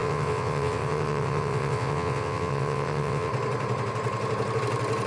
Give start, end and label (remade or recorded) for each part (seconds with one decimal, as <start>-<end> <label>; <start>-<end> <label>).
0.0-3.3 remade; 3.3-5.1 recorded